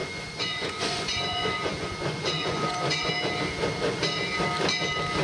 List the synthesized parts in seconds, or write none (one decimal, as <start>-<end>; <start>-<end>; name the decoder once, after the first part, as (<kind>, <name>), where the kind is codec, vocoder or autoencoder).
0.0-3.1 (vocoder, Vocos)